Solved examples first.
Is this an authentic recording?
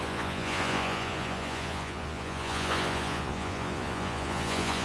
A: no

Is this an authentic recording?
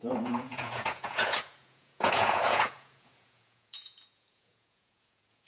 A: no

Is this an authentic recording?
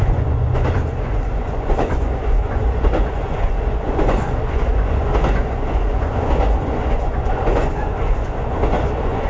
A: no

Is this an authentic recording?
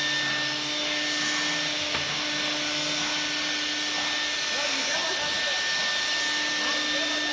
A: yes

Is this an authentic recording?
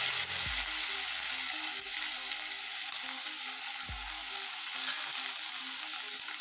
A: yes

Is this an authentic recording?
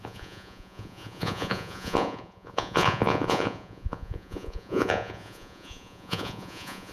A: no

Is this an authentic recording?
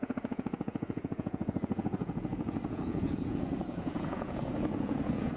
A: no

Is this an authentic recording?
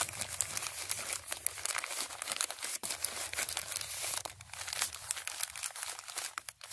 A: yes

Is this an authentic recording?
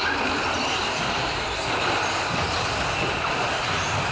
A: yes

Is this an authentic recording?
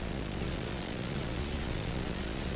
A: no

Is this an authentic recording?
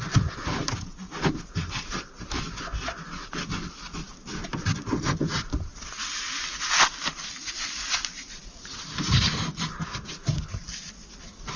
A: yes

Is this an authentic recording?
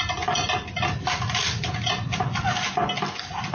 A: yes